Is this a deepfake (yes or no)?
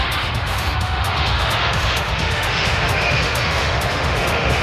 yes